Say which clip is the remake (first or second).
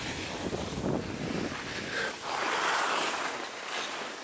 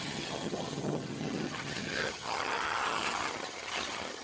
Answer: second